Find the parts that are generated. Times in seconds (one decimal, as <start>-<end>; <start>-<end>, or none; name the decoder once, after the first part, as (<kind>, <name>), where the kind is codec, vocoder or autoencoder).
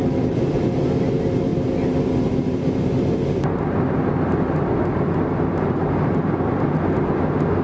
none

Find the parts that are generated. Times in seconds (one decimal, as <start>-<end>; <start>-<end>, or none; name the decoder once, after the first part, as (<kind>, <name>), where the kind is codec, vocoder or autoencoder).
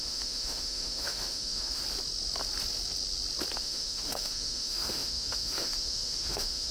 0.0-1.8 (autoencoder, DAC-VAE); 3.6-6.7